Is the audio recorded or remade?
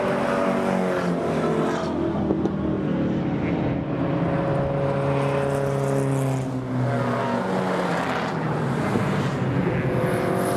recorded